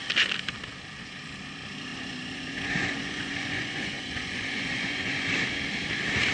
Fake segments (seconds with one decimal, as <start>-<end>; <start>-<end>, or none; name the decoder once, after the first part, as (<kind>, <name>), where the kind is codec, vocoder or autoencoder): 1.9-5.3 (vocoder, Vocos)